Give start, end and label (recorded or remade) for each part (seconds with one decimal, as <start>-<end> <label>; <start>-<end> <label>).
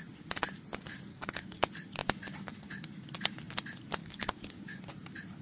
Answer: 0.0-1.1 recorded; 1.1-1.6 remade; 1.6-4.0 recorded; 4.0-4.8 remade; 4.8-5.4 recorded